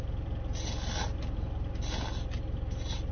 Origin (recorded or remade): recorded